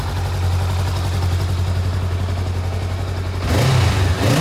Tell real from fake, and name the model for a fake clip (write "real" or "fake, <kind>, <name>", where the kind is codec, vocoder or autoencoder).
real